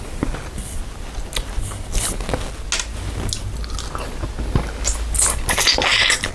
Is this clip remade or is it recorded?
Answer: recorded